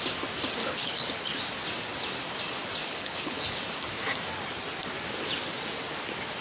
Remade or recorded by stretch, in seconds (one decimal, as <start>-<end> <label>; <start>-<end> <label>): 0.0-0.6 recorded; 0.6-1.4 remade; 1.4-2.8 recorded; 2.8-3.6 remade; 3.6-6.4 recorded